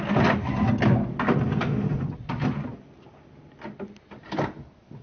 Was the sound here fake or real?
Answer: real